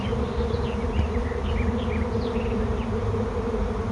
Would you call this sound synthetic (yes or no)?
no